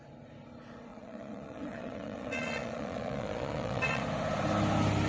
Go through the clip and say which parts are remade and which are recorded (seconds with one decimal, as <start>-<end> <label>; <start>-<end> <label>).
0.0-0.9 recorded; 0.9-4.0 remade; 4.0-5.1 recorded